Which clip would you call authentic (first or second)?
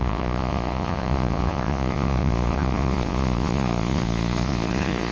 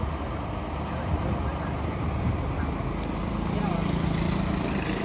second